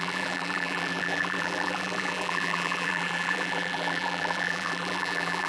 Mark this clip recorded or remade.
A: remade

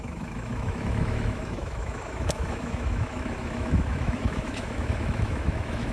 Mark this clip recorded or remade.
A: remade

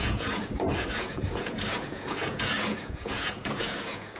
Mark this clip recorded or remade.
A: remade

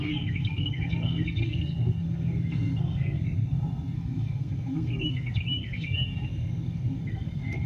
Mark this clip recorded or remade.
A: remade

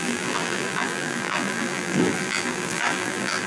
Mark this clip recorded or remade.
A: remade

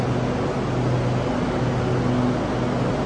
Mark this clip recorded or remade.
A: recorded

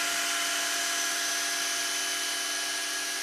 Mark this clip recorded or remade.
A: recorded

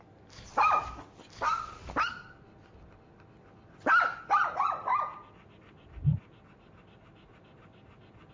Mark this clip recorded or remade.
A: recorded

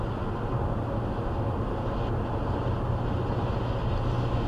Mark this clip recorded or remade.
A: recorded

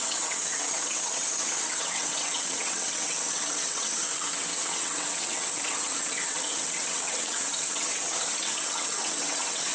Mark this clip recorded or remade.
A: remade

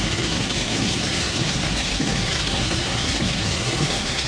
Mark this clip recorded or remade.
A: remade